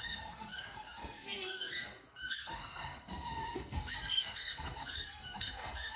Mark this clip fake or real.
fake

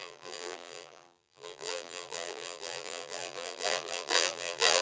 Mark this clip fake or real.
fake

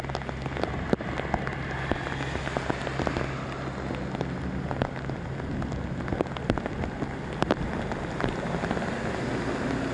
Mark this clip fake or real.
real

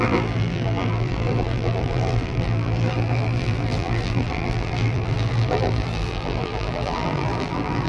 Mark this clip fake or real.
fake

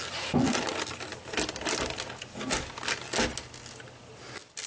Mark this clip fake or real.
real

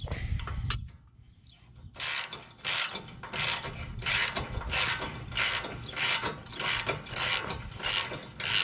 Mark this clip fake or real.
real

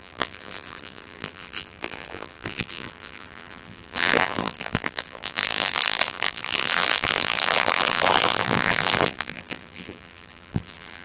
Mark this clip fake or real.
fake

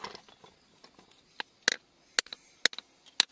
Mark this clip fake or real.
real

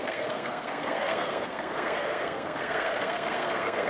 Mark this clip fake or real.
fake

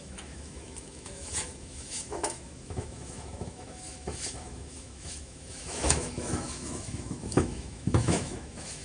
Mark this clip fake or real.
fake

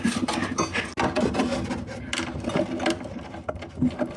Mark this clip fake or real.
real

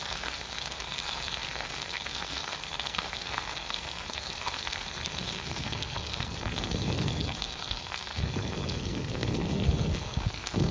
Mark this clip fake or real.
fake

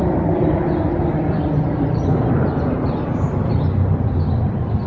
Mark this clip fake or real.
real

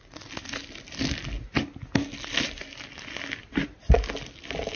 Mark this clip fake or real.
real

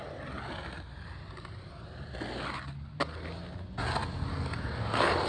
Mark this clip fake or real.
real